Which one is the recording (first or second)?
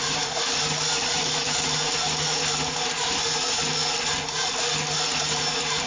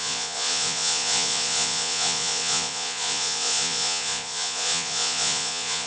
first